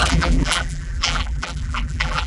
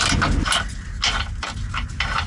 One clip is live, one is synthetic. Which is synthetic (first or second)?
first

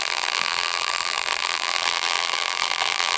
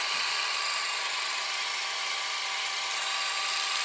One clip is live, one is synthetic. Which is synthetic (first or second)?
first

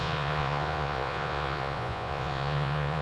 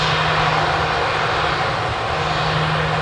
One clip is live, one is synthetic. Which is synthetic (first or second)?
first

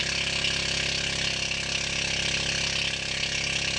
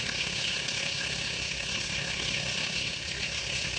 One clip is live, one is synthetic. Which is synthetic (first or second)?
second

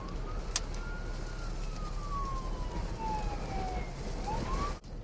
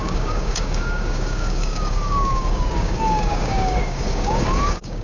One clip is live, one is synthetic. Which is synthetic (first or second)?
second